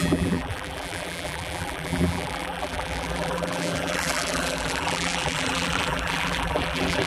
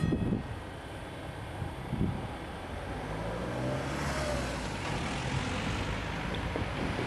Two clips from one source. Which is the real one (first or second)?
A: second